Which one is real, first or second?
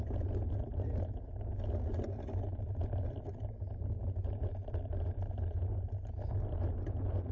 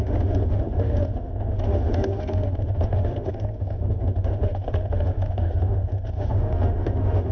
first